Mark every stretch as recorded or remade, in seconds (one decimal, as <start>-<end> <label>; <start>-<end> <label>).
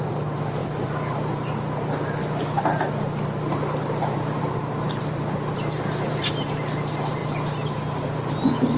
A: 0.0-8.8 recorded